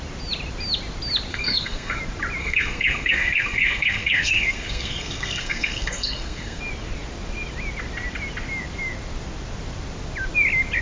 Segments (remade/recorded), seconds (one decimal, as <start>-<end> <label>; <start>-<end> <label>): 0.0-1.3 recorded; 1.3-2.0 remade; 2.0-2.4 recorded; 2.4-6.6 remade; 6.6-10.8 recorded

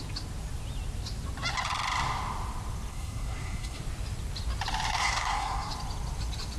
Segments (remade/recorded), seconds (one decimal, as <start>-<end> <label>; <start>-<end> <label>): 0.0-2.9 recorded; 2.9-3.8 remade; 3.8-4.9 recorded; 4.9-5.7 remade; 5.7-6.6 recorded

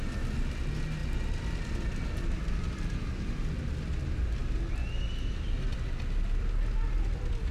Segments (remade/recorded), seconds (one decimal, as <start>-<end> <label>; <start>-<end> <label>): 0.0-7.5 recorded

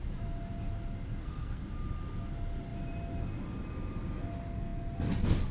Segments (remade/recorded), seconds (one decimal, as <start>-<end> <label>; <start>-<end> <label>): 0.0-1.2 recorded; 1.2-1.7 remade; 1.7-5.5 recorded